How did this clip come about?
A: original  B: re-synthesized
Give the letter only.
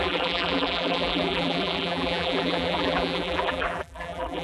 B